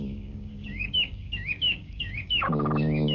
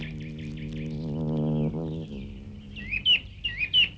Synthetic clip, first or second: first